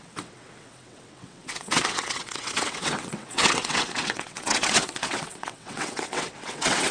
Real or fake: fake